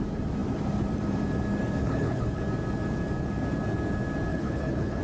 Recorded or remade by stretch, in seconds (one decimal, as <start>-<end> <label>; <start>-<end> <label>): 0.0-1.8 recorded; 1.8-2.4 remade; 2.4-4.3 recorded; 4.3-5.0 remade